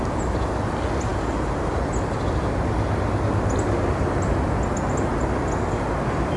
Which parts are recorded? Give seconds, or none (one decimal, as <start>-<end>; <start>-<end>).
0.0-6.4